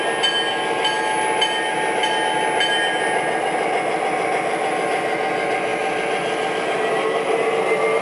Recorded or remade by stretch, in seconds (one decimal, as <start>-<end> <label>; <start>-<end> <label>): 0.0-8.0 recorded